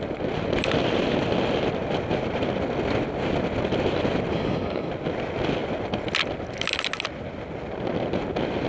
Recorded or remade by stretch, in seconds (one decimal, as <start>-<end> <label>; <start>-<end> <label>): 0.0-4.3 recorded; 4.3-4.9 remade; 4.9-8.7 recorded